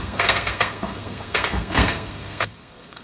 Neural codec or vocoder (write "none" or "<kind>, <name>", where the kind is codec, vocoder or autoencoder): codec, SNAC